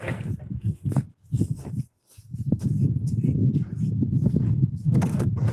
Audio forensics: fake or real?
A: fake